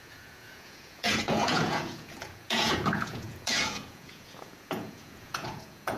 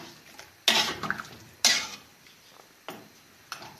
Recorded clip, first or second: second